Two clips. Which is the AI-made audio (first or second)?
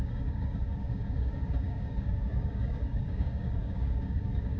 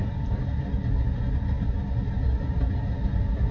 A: first